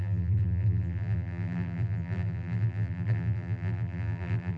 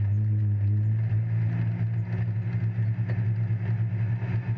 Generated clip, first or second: first